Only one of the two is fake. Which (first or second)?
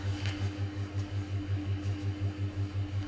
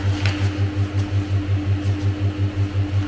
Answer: first